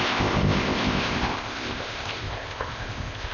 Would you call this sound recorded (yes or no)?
no